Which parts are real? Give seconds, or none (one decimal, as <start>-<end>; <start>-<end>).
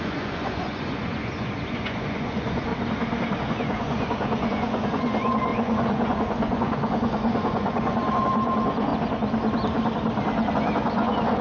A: 2.7-3.4; 8.9-10.5